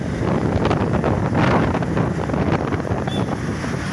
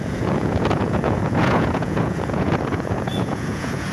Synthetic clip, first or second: second